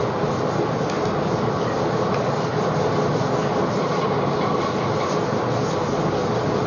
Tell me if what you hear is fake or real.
real